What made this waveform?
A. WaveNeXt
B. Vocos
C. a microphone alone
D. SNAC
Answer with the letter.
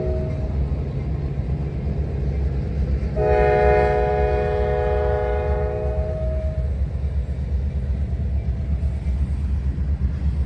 C